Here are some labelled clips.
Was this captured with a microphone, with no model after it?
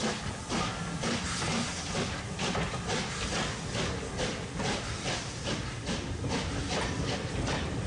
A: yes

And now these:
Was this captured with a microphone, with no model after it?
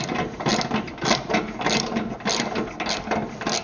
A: yes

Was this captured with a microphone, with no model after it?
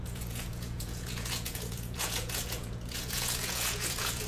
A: no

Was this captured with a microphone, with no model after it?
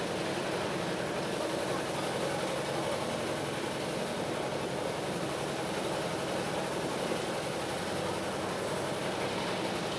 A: yes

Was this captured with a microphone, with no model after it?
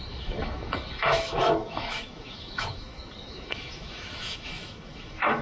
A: no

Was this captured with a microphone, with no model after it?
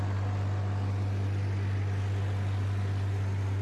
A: yes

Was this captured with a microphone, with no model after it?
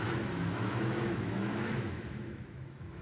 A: no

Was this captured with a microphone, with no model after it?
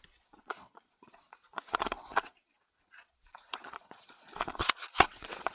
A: no